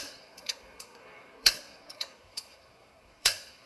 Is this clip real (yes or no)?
no